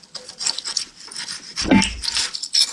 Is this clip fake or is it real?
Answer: real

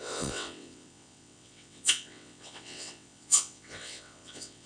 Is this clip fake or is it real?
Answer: fake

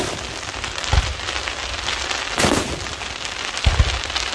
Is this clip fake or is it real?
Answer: real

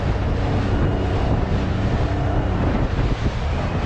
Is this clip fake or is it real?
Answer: real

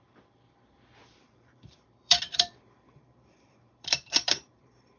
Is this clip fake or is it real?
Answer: fake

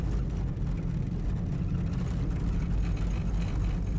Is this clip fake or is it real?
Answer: real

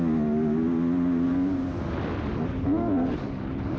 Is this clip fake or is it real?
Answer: real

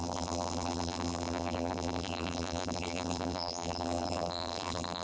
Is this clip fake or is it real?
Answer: fake